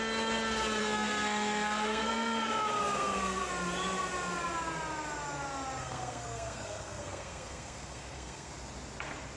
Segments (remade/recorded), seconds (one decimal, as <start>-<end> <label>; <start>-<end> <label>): 0.0-0.8 recorded; 0.8-3.5 remade; 3.5-5.8 recorded; 5.8-8.5 remade; 8.5-9.4 recorded